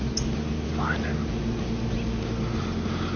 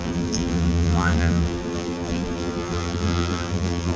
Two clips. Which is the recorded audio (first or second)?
first